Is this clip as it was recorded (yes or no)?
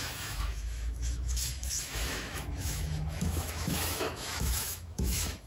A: no